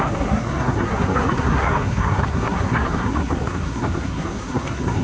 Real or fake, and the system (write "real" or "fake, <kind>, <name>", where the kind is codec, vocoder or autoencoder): fake, codec, SNAC